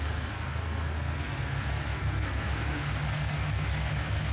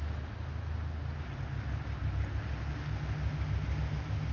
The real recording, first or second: second